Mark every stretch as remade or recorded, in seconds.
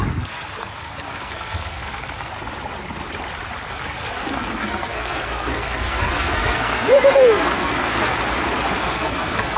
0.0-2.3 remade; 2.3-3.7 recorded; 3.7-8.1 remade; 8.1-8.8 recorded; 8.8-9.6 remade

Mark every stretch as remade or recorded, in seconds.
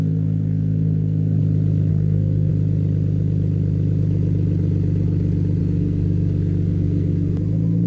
0.0-1.4 remade; 1.4-1.9 recorded; 1.9-2.5 remade; 2.5-5.6 recorded; 5.6-7.3 remade; 7.3-7.9 recorded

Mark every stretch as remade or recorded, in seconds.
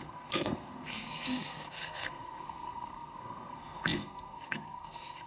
0.0-5.3 remade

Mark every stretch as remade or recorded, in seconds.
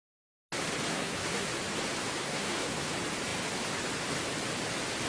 0.0-0.9 recorded; 0.9-1.5 remade; 1.5-2.2 recorded; 2.2-2.9 remade; 2.9-5.1 recorded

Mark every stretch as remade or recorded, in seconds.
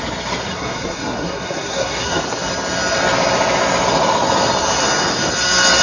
0.0-0.4 recorded; 0.4-2.2 remade; 2.2-5.8 recorded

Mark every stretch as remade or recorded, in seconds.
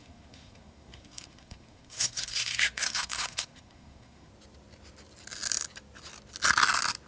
0.0-4.3 remade; 4.3-7.1 recorded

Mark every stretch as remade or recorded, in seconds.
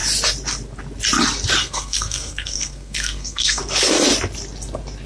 0.0-1.6 recorded; 1.6-3.6 remade; 3.6-5.1 recorded